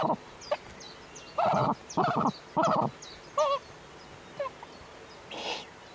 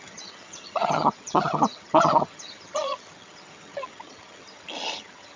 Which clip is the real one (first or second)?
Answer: first